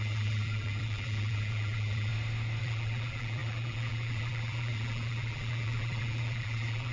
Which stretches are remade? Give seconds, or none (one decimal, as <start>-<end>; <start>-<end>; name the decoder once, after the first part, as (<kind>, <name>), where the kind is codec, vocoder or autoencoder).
0.0-2.1 (vocoder, BigVGAN v2); 2.6-6.9